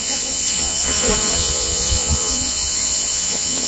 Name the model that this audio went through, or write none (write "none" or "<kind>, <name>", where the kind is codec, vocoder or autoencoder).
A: vocoder, Vocos